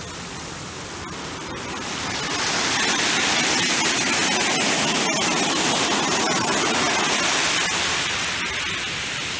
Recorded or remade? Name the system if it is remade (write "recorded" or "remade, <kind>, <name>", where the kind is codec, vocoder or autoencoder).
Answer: recorded